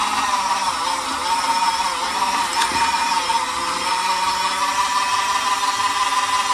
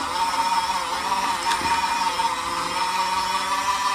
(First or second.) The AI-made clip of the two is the first